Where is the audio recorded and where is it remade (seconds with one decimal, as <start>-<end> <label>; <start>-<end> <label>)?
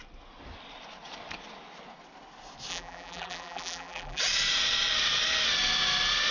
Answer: 0.0-2.7 recorded; 2.7-4.2 remade; 4.2-6.3 recorded